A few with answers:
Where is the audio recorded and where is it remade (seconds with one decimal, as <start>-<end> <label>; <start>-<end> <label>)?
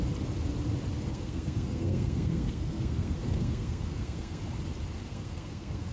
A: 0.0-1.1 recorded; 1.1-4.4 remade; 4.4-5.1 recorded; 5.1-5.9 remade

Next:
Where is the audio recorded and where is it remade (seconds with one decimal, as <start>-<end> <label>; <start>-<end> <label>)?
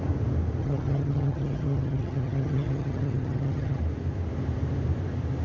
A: 0.0-0.6 recorded; 0.6-3.8 remade; 3.8-5.4 recorded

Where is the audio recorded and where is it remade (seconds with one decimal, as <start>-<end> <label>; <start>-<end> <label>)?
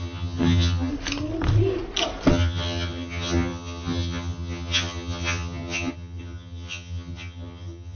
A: 0.0-0.9 remade; 0.9-2.3 recorded; 2.3-8.0 remade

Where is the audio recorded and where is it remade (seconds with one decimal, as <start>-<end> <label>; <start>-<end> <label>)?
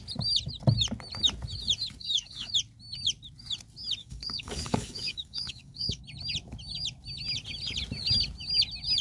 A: 0.0-2.0 recorded; 2.0-2.5 remade; 2.5-4.0 recorded; 4.0-6.0 remade; 6.0-9.0 recorded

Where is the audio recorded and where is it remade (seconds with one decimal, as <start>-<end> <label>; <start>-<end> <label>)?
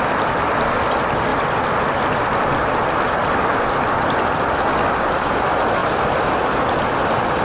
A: 0.0-7.4 recorded